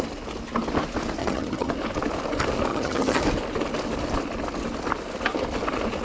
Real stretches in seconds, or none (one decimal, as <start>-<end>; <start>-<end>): 0.0-1.2; 1.7-2.7; 3.2-6.0